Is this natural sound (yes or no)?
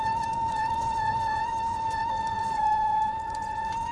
no